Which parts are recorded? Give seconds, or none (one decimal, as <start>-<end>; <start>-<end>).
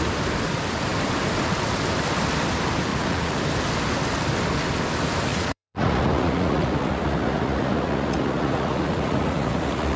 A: 0.0-2.9; 3.4-5.3